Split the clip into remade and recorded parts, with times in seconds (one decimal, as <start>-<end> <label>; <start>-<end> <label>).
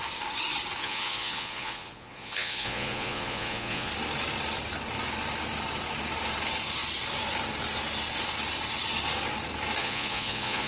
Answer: 0.0-0.8 recorded; 0.8-3.9 remade; 3.9-9.8 recorded; 9.8-10.7 remade